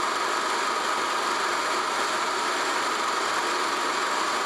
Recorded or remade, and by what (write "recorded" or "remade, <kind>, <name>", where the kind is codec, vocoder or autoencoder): recorded